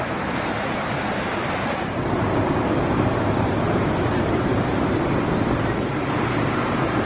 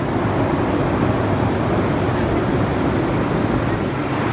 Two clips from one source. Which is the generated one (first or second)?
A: first